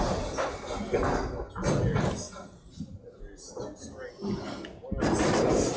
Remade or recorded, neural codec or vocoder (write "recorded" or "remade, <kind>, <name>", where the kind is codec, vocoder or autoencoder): recorded